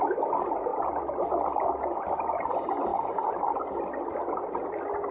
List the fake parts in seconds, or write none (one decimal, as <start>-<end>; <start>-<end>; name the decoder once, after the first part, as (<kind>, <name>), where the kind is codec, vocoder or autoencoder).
none